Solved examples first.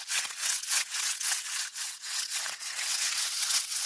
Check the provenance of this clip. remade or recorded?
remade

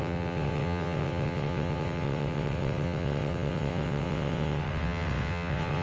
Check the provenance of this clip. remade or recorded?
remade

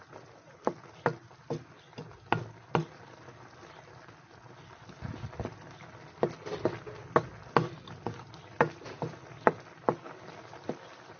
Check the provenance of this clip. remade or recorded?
recorded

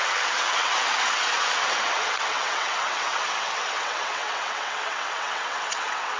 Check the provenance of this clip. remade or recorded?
remade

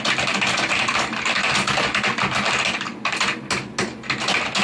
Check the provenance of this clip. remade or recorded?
recorded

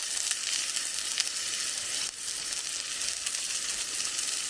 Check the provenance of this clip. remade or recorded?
recorded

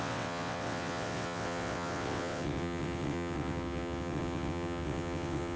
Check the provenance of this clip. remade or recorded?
remade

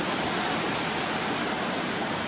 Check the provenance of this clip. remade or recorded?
recorded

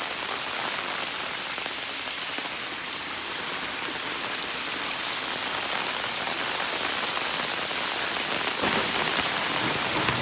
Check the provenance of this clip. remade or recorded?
recorded